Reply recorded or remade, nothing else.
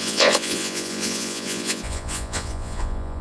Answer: remade